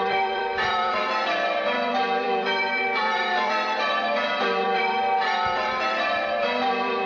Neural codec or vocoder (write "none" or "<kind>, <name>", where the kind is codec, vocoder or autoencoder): vocoder, BigVGAN v2